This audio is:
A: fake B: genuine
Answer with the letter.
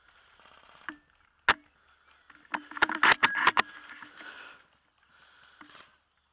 B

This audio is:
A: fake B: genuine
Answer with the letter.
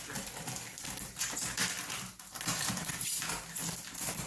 B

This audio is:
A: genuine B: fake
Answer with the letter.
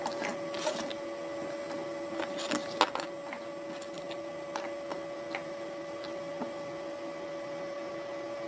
A